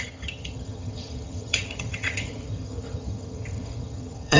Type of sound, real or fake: fake